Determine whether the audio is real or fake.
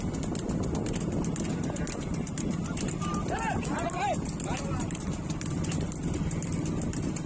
real